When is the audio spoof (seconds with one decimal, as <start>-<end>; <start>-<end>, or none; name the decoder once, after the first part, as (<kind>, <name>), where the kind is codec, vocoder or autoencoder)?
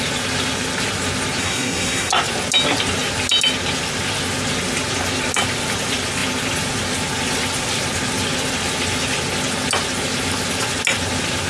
1.4-2.1 (codec, SNAC)